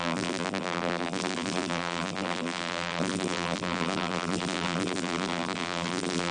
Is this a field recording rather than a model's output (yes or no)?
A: no